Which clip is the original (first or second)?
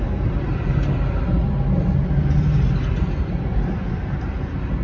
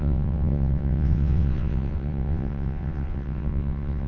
first